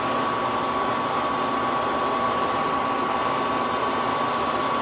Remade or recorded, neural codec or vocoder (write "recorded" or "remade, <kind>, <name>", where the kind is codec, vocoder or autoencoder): recorded